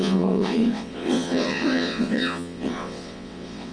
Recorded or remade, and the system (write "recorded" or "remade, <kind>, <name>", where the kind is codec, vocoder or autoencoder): remade, vocoder, WaveNeXt